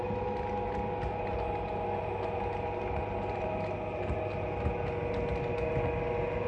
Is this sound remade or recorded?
recorded